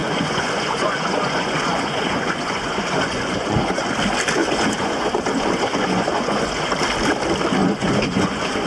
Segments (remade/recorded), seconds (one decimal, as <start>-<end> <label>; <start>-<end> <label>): 0.0-3.9 remade; 3.9-4.4 recorded; 4.4-6.7 remade; 6.7-7.6 recorded; 7.6-8.7 remade

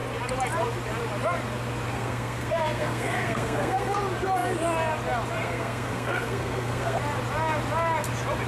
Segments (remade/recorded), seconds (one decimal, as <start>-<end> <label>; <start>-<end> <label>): 0.0-1.9 recorded; 1.9-4.0 remade; 4.0-5.4 recorded; 5.4-7.0 remade; 7.0-8.5 recorded